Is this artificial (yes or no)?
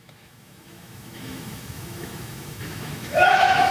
yes